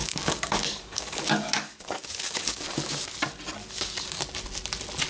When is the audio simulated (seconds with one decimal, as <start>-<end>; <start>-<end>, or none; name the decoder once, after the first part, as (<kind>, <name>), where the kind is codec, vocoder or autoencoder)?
0.0-3.1 (codec, DAC); 3.6-4.2